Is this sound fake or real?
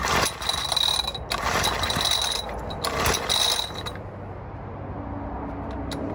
real